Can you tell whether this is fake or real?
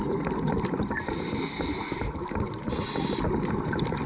real